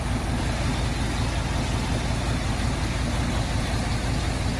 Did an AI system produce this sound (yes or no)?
no